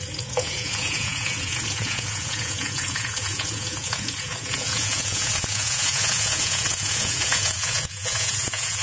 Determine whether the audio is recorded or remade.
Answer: remade